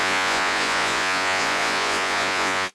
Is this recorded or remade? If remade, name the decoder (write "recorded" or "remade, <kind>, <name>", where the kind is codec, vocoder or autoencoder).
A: remade, vocoder, Vocos